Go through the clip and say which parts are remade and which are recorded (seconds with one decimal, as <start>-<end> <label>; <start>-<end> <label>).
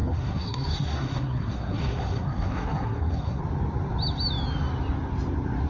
0.0-3.4 remade; 3.4-5.7 recorded